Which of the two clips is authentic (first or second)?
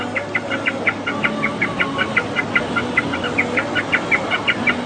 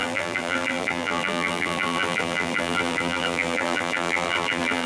first